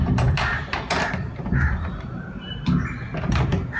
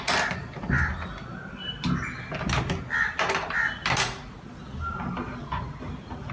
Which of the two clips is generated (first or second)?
first